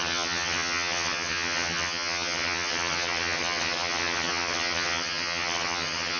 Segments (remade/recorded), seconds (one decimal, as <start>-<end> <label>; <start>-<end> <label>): 0.0-6.2 remade